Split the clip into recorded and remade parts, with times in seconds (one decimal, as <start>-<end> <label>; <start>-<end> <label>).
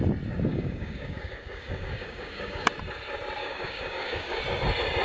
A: 0.0-0.5 recorded; 0.5-2.7 remade; 2.7-3.4 recorded; 3.4-4.4 remade; 4.4-5.0 recorded